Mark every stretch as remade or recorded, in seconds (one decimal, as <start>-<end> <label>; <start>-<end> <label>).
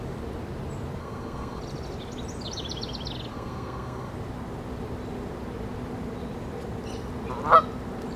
0.0-1.0 recorded; 1.0-1.6 remade; 1.6-3.3 recorded; 3.3-4.1 remade; 4.1-8.2 recorded